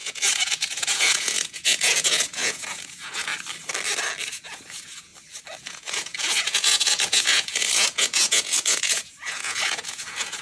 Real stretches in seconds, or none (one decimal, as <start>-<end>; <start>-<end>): 3.3-4.3; 5.1-5.6